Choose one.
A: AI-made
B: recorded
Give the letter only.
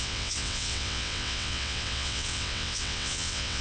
A